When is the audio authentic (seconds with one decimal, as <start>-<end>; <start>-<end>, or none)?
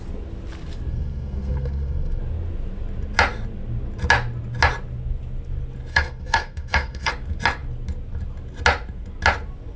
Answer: 0.0-0.9; 2.2-5.9; 7.1-9.8